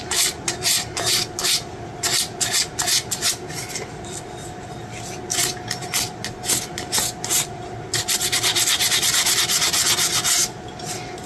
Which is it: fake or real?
real